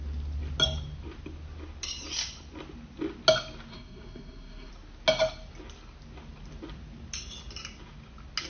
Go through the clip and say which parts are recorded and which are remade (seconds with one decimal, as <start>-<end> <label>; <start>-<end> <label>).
0.0-3.7 recorded; 3.7-4.7 remade; 4.7-8.5 recorded